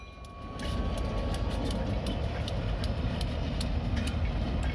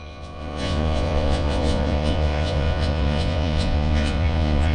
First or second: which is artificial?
second